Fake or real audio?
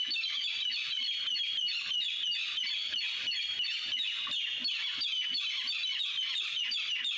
real